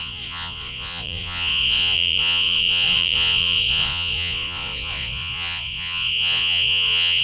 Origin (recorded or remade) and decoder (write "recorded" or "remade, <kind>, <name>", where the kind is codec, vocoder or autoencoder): remade, vocoder, Vocos